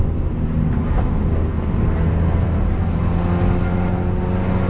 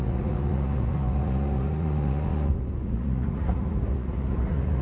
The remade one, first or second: second